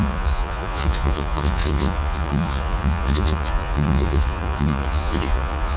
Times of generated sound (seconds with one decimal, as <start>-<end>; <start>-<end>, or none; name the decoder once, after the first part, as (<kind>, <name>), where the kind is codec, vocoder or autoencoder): 0.0-5.8 (vocoder, Vocos)